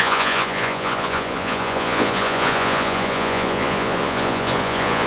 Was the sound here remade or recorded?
remade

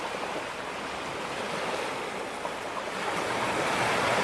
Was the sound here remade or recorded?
recorded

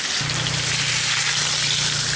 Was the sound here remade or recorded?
recorded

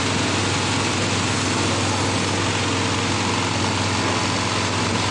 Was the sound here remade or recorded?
recorded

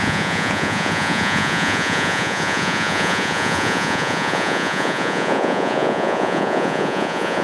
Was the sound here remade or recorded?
remade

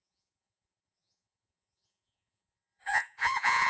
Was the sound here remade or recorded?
remade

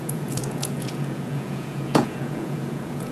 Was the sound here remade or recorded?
remade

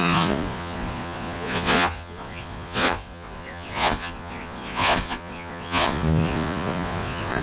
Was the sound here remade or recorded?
remade